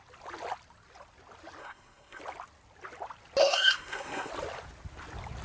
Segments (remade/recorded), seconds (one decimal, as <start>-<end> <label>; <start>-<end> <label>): 0.0-1.6 recorded; 1.6-2.2 remade; 2.2-3.4 recorded; 3.4-4.3 remade; 4.3-5.4 recorded